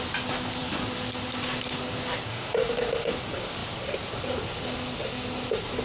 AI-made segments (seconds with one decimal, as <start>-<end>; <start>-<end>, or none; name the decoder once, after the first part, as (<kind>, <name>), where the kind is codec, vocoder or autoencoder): 2.3-3.1 (autoencoder, DAC-VAE)